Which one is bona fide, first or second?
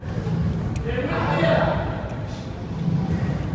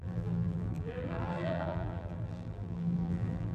first